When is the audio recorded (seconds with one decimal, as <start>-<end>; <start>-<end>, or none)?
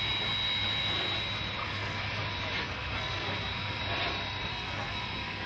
0.0-1.6; 2.1-2.6; 3.8-4.5